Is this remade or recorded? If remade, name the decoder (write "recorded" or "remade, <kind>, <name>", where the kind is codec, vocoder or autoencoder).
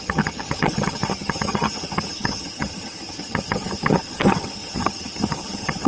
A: remade, vocoder, HiFi-GAN